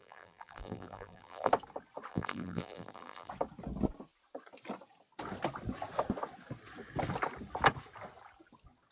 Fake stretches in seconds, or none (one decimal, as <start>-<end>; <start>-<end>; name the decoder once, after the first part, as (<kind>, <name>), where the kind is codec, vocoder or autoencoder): 0.0-1.5 (vocoder, BigVGAN v2); 2.1-3.3